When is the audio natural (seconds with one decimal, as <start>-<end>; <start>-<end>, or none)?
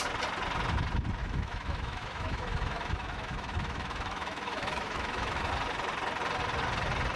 0.0-1.2; 5.5-7.2